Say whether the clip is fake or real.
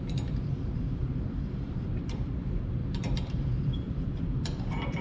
fake